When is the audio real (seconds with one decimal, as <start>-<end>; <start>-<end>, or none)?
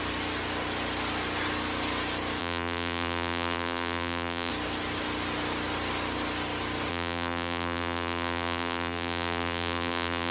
0.0-2.4; 4.5-6.9